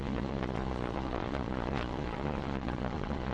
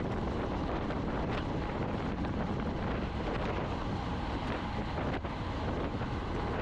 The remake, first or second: first